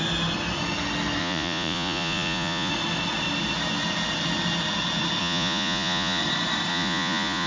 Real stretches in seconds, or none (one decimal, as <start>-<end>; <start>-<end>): 0.0-1.2; 2.7-5.2; 6.2-6.7